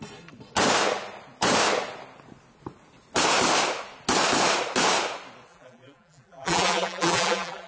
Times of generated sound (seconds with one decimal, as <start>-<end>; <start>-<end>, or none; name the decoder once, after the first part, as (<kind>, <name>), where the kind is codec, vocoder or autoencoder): 5.5-7.7 (vocoder, BigVGAN v2)